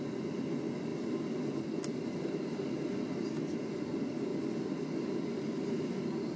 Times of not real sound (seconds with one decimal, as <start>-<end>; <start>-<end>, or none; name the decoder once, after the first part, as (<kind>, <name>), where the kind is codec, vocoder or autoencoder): none